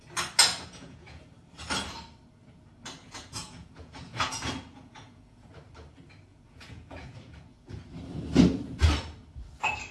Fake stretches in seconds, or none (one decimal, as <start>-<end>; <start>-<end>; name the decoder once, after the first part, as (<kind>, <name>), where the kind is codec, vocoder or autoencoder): 0.5-1.2 (vocoder, Vocos); 3.0-5.5; 6.3-7.9